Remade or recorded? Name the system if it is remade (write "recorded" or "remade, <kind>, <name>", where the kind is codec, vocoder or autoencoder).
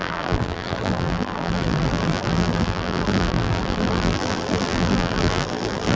remade, vocoder, BigVGAN v2